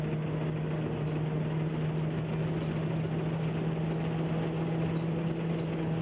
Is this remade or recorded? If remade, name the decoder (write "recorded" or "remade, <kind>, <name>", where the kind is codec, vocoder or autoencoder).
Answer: recorded